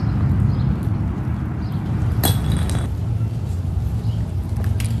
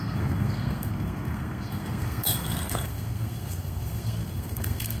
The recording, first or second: first